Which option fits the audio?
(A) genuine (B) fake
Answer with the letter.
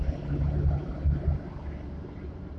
A